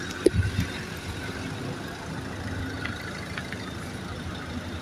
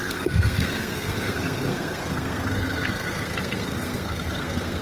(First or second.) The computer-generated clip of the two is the second